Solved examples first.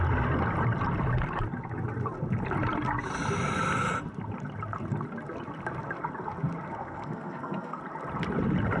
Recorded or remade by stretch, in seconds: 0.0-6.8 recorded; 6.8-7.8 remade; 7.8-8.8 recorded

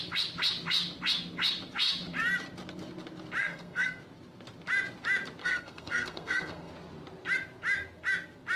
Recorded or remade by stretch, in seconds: 0.0-3.4 recorded; 3.4-4.0 remade; 4.0-5.4 recorded; 5.4-6.7 remade; 6.7-8.6 recorded

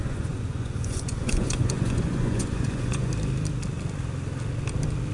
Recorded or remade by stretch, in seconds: 0.0-3.1 remade; 3.1-5.1 recorded